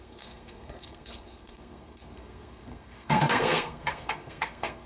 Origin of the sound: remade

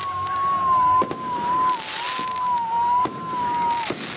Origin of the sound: recorded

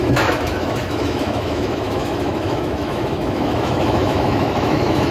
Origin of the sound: remade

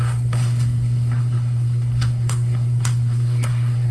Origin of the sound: remade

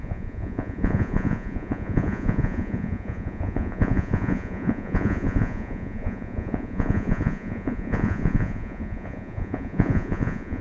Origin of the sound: remade